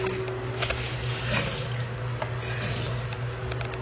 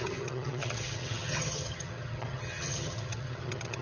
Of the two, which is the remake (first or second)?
second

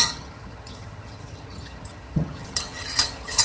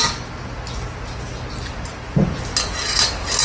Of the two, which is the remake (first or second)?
first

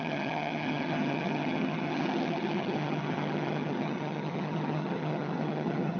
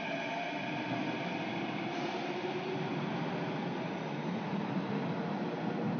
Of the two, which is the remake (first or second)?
first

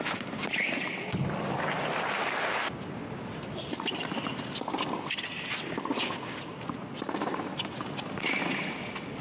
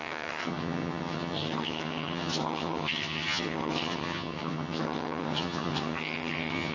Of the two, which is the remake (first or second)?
second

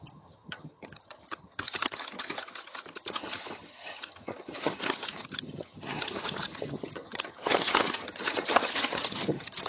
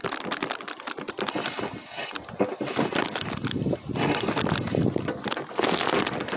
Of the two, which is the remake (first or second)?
first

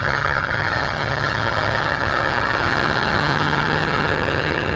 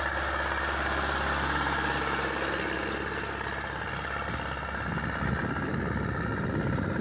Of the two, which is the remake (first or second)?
first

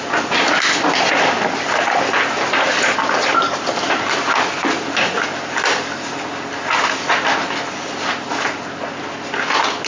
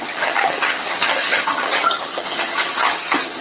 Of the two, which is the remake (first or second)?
second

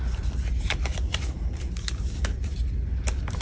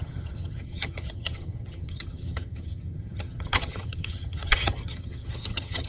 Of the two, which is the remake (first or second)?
second